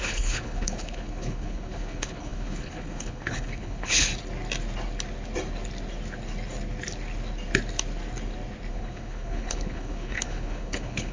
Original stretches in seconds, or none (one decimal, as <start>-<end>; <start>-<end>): 4.1-8.7